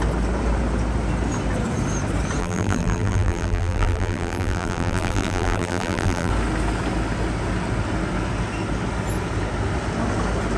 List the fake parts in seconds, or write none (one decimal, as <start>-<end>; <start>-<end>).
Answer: 2.4-6.3